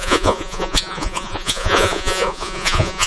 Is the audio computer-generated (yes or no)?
yes